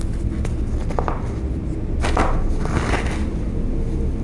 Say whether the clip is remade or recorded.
recorded